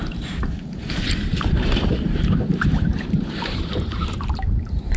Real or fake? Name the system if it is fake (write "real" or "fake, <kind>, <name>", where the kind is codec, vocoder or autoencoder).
fake, vocoder, BigVGAN v2